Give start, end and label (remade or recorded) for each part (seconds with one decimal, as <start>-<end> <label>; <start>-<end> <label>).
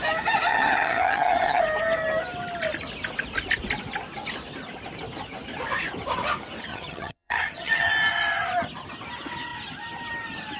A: 0.0-0.5 recorded; 0.5-1.6 remade; 1.6-6.7 recorded; 6.7-7.9 remade; 7.9-10.6 recorded